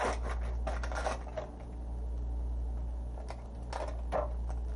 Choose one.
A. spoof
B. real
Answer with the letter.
B